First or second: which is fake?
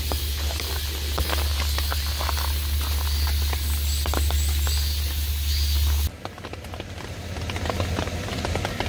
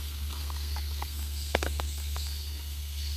second